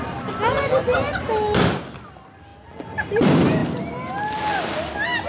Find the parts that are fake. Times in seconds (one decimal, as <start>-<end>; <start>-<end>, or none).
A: none